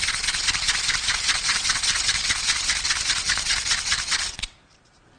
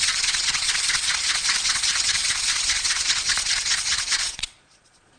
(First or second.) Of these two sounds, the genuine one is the first